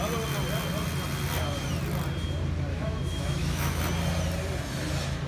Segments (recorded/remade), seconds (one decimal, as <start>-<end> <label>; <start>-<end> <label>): 0.0-2.7 recorded; 2.7-3.8 remade; 3.8-5.3 recorded